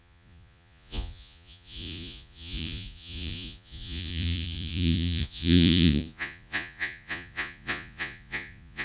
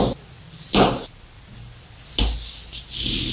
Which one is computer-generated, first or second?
first